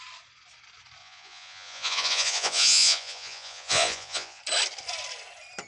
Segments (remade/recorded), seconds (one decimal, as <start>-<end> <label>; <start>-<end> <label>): 0.0-1.0 recorded; 1.0-4.4 remade; 4.4-5.7 recorded